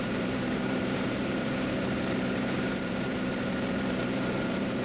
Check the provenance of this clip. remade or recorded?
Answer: remade